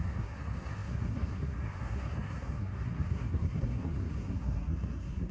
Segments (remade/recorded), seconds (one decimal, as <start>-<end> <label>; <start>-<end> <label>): 0.0-5.3 remade